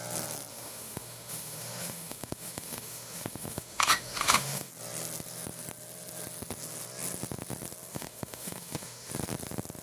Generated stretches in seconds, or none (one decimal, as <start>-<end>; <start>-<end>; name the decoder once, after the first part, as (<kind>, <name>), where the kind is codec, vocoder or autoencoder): 0.5-4.7 (autoencoder, DAC-VAE); 7.9-9.1